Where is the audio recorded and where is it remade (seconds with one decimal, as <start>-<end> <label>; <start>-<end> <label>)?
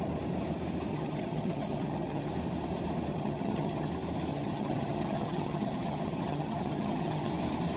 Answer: 0.0-0.9 recorded; 0.9-2.3 remade; 2.3-3.1 recorded; 3.1-3.9 remade; 3.9-4.3 recorded; 4.3-7.3 remade; 7.3-7.8 recorded